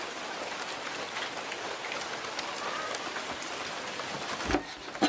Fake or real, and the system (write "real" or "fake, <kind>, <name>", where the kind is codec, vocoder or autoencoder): real